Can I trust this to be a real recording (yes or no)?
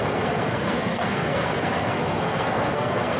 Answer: no